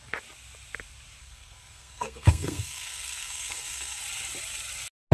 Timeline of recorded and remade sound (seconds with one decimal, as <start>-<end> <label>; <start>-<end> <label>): 0.0-1.2 recorded; 1.2-4.0 remade; 4.0-5.1 recorded